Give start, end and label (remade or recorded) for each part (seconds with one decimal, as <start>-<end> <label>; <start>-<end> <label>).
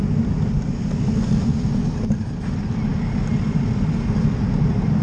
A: 0.0-5.0 recorded